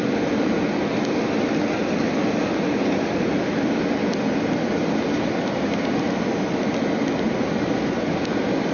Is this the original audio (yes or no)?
yes